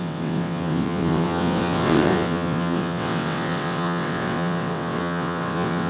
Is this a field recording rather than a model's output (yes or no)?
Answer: no